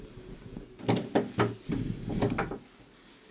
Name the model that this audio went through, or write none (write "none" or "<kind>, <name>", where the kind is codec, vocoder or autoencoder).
none